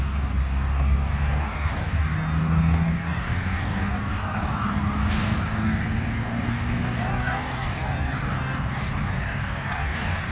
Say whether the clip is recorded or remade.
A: remade